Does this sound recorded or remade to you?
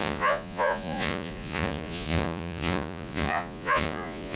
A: remade